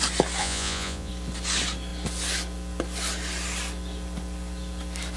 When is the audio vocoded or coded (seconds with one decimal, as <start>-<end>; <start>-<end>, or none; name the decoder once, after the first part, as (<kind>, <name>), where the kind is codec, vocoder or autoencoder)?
0.4-1.1 (vocoder, Vocos)